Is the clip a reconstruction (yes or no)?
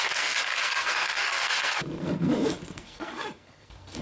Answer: yes